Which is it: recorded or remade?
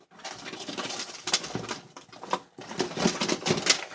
recorded